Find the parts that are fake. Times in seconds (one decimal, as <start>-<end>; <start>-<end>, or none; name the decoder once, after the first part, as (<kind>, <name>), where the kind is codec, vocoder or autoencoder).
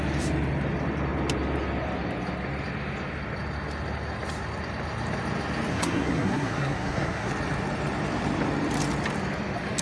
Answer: 5.7-7.3 (codec, SNAC)